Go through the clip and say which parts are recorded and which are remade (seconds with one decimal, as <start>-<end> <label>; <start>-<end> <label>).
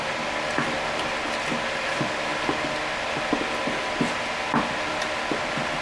0.0-5.8 recorded